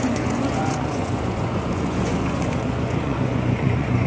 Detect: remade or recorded remade